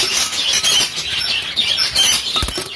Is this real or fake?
real